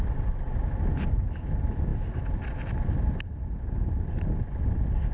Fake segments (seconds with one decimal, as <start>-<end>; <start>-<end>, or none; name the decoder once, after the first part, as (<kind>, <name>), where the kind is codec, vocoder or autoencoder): none